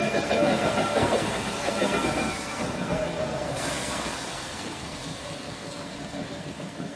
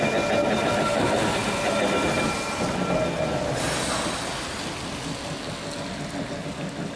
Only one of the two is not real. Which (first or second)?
first